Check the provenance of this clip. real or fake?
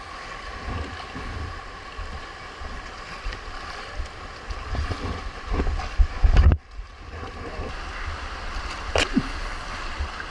real